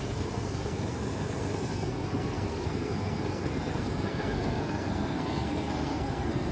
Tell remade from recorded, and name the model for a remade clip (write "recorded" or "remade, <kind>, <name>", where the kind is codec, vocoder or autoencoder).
remade, codec, SNAC